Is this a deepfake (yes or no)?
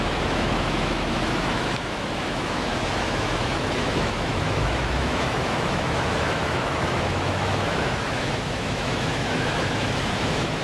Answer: yes